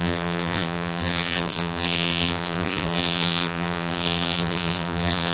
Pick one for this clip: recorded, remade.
remade